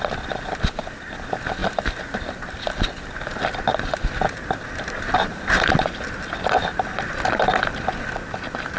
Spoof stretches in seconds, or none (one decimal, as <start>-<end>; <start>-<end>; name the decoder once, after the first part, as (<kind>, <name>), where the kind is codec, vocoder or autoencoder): none